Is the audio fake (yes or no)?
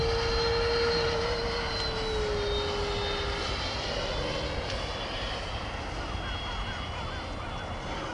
no